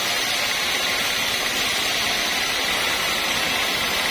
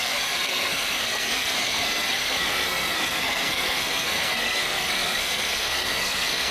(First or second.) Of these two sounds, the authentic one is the first